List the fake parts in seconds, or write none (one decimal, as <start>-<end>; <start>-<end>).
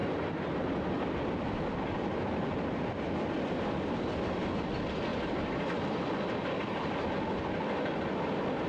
0.0-3.3; 5.1-6.1